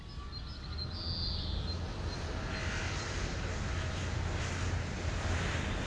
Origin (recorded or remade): recorded